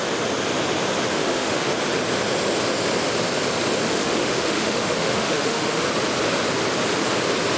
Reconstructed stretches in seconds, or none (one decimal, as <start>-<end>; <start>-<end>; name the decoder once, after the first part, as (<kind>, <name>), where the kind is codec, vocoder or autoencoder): 1.1-1.7 (autoencoder, DAC-VAE); 3.9-5.8